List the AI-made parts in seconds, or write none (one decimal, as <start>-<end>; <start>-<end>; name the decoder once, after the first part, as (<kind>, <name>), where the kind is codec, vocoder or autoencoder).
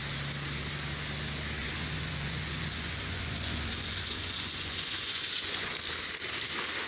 1.6-5.7 (vocoder, Vocos)